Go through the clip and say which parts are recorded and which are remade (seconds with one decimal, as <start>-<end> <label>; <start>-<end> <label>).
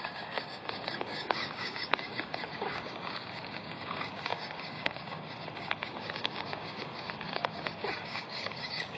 0.0-9.0 remade